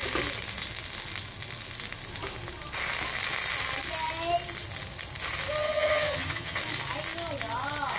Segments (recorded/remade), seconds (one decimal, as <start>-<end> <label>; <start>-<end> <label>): 0.0-5.6 recorded; 5.6-6.6 remade; 6.6-8.0 recorded